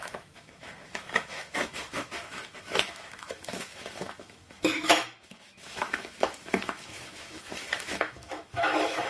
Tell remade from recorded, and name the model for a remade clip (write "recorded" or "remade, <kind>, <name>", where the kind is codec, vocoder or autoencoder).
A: remade, autoencoder, DAC-VAE